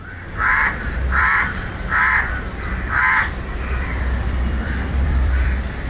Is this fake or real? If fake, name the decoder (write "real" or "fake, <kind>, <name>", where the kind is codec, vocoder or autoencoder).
fake, vocoder, BigVGAN v2